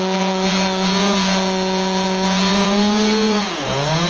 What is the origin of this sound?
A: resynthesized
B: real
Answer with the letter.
A